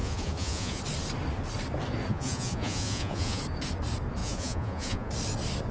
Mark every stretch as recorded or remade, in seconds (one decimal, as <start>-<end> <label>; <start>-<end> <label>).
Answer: 0.0-0.8 remade; 0.8-2.1 recorded; 2.1-3.4 remade; 3.4-4.2 recorded; 4.2-5.1 remade; 5.1-5.7 recorded